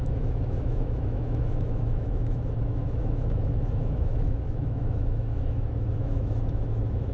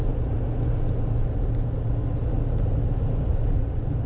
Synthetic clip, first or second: first